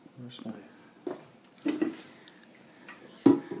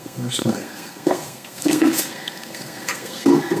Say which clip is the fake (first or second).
second